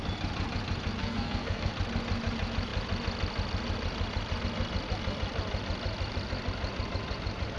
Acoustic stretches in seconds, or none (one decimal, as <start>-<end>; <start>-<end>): 0.0-1.0; 1.7-7.6